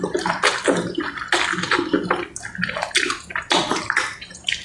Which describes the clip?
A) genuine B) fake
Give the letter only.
A